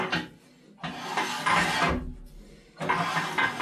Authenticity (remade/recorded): recorded